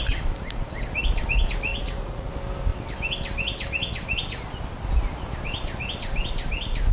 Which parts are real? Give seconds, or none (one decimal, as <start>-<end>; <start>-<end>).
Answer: 0.0-1.7; 2.3-6.9